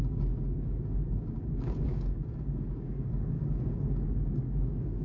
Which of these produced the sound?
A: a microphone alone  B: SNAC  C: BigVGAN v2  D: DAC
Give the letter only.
D